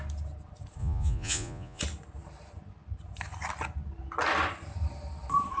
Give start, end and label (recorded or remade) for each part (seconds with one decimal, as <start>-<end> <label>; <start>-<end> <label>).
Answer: 0.0-0.8 recorded; 0.8-1.8 remade; 1.8-5.6 recorded